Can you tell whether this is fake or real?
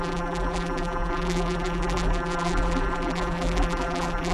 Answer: fake